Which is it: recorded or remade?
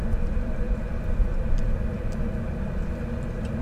remade